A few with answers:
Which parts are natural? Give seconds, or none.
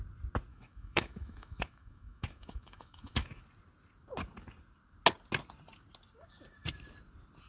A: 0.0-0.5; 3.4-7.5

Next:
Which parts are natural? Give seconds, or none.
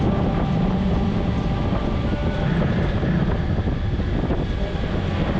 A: 0.0-5.4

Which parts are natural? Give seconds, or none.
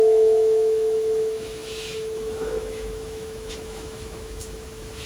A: none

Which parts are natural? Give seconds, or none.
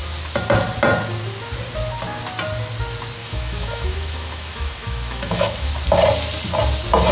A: 0.0-3.2; 5.7-7.1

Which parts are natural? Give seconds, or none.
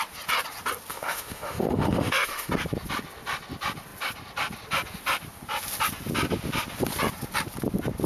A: 0.0-0.9; 2.5-8.1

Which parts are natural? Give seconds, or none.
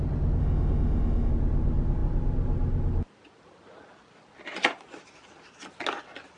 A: 0.0-0.4; 1.3-6.4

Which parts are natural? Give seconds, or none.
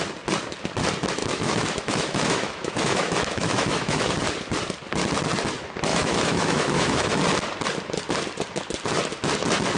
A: 0.0-1.2; 4.1-5.9; 7.2-9.8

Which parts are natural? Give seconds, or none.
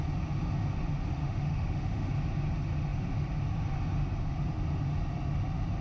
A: 0.0-1.2; 2.1-5.8